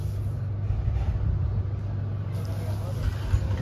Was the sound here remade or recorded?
recorded